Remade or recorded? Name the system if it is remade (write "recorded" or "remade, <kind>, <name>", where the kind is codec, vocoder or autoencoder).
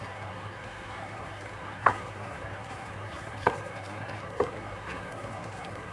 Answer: remade, codec, SNAC